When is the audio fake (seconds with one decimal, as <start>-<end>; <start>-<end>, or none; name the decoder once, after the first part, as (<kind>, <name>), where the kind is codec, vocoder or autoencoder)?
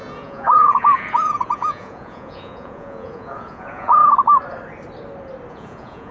0.0-4.0 (vocoder, Vocos); 5.5-6.1